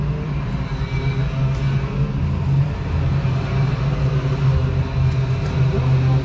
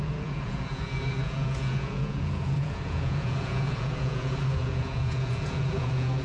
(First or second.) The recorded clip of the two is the first